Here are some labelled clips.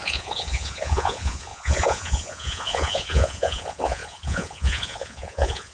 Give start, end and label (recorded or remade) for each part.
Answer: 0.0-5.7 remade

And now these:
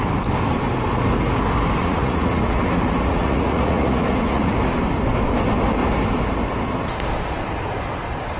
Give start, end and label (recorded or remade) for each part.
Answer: 0.0-1.8 recorded; 1.8-4.5 remade; 4.5-8.4 recorded

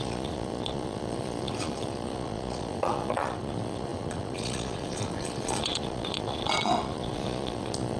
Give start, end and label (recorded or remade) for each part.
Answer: 0.0-8.0 remade

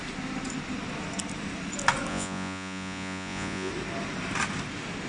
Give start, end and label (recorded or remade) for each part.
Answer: 0.0-2.1 recorded; 2.1-3.7 remade; 3.7-5.1 recorded

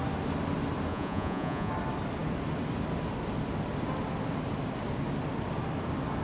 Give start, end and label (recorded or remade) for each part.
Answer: 0.0-0.9 recorded; 0.9-1.7 remade; 1.7-6.2 recorded

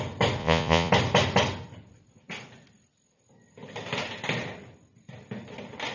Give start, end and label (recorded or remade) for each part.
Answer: 0.0-0.4 recorded; 0.4-0.9 remade; 0.9-5.9 recorded

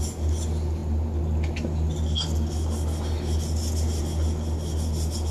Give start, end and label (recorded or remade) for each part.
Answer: 0.0-5.3 recorded